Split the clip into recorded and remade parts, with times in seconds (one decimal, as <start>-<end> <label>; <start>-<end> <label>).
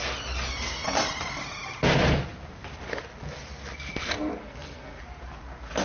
0.0-4.4 recorded; 4.4-5.0 remade; 5.0-5.8 recorded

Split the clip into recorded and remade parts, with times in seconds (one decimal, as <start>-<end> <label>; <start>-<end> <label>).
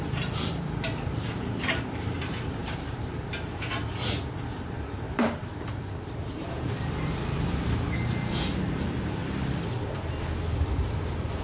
0.0-9.2 remade; 9.2-10.4 recorded; 10.4-11.4 remade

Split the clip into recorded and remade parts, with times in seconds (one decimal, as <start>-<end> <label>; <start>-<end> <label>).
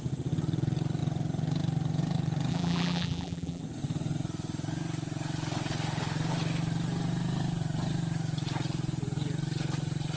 0.0-2.5 recorded; 2.5-3.6 remade; 3.6-10.2 recorded